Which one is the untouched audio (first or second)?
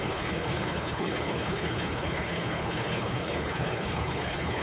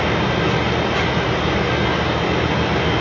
second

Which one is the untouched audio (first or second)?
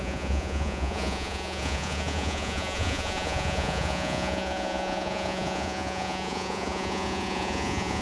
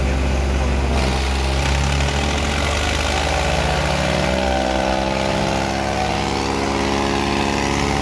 second